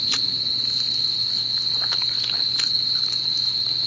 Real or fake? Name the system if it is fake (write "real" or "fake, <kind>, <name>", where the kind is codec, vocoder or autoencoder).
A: fake, vocoder, BigVGAN v2